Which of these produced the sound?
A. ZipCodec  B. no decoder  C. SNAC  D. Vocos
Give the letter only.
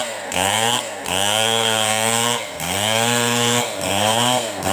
C